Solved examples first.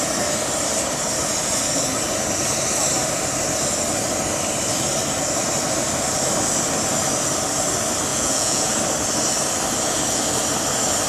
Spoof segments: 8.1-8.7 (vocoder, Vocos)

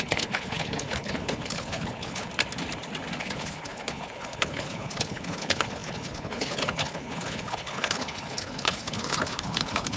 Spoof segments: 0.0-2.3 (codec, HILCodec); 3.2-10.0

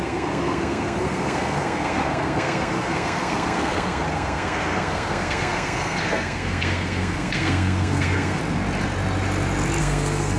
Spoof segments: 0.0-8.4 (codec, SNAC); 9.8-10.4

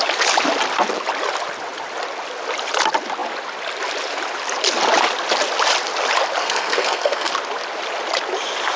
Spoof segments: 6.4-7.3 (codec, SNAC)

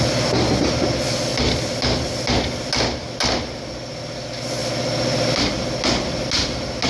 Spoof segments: none

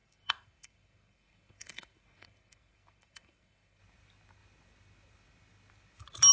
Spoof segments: 0.0-3.8 (codec, SNAC)